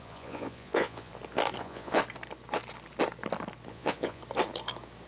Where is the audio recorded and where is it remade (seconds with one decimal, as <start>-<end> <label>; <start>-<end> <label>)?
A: 0.0-1.1 remade; 1.1-1.6 recorded; 1.6-2.0 remade; 2.0-3.7 recorded; 3.7-4.2 remade; 4.2-5.1 recorded